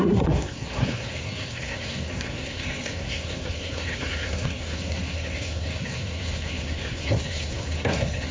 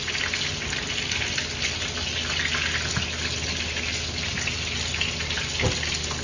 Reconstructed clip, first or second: first